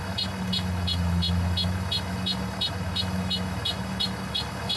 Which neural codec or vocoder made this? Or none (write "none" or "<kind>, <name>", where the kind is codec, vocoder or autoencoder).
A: autoencoder, DAC-VAE